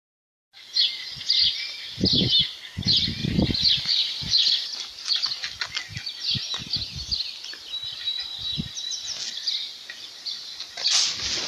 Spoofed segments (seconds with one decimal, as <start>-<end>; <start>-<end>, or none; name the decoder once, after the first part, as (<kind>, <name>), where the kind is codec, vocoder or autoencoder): 3.2-5.1 (vocoder, BigVGAN v2)